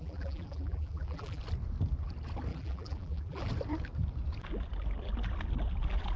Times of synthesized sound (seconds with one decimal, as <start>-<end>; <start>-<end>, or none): 0.0-1.4; 2.5-3.4